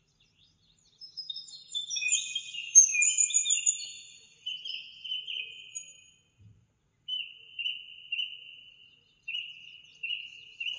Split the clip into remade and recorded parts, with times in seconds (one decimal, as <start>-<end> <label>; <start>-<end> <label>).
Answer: 0.0-2.9 remade; 2.9-3.7 recorded; 3.7-10.8 remade